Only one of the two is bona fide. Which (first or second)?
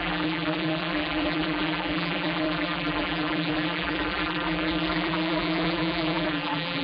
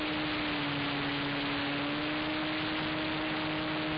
second